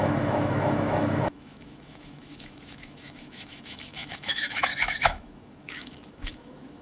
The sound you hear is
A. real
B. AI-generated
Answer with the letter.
B